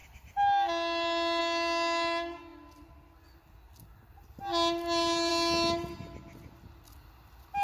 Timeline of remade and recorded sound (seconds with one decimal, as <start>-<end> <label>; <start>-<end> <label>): 0.0-7.6 recorded